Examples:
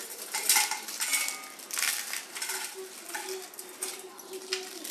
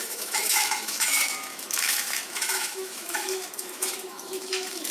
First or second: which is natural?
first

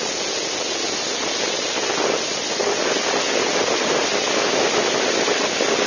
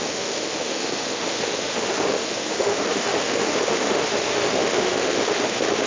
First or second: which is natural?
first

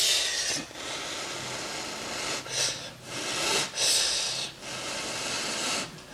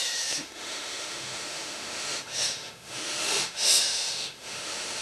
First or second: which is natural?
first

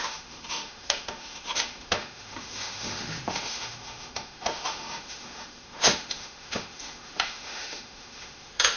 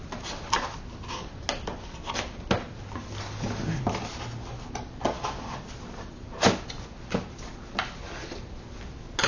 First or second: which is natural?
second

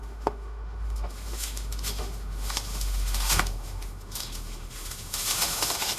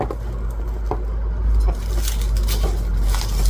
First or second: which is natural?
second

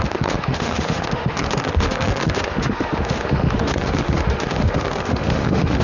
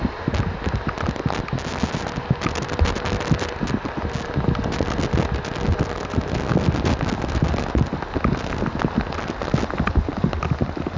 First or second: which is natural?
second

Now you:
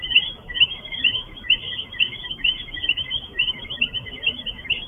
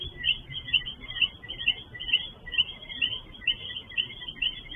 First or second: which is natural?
second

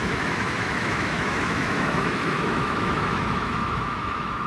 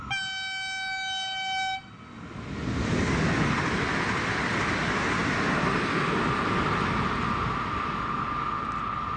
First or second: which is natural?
second